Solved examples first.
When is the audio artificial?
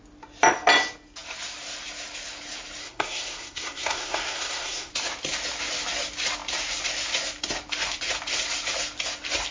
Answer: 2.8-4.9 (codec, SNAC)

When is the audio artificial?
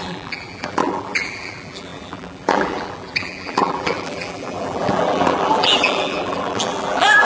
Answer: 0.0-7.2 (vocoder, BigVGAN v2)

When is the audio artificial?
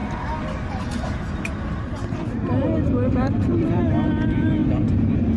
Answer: 1.8-4.6 (vocoder, BigVGAN v2)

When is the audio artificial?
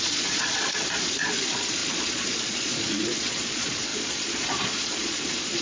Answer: 0.0-5.6 (vocoder, Vocos)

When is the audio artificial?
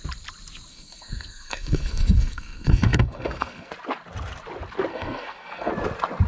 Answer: 0.7-3.7 (codec, SNAC); 4.9-5.7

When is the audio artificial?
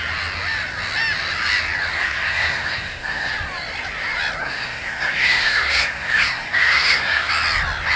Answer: 1.9-3.3 (codec, SNAC); 4.4-7.3